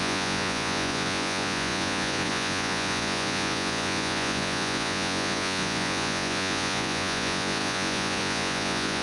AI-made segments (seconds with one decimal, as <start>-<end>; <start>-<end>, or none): 0.0-9.0